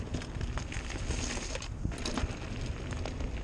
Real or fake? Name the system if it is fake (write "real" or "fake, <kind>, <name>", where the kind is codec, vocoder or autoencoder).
real